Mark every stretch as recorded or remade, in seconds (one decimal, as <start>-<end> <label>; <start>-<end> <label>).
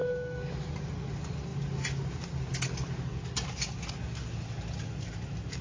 0.0-0.7 remade; 0.7-5.6 recorded